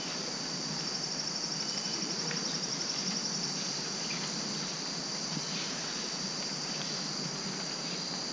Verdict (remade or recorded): recorded